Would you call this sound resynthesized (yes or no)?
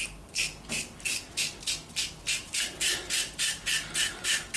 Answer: no